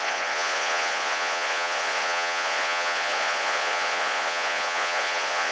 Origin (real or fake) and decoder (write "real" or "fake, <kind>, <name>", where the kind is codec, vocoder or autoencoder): fake, vocoder, Vocos